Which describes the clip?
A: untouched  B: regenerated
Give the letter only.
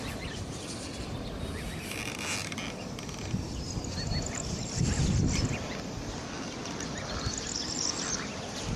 A